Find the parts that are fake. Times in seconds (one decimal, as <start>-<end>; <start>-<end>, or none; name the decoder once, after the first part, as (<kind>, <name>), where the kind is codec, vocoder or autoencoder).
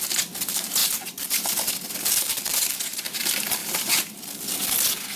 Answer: 3.6-4.2 (vocoder, BigVGAN v2)